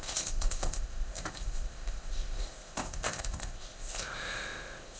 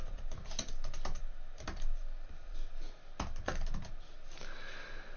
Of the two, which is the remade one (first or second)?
first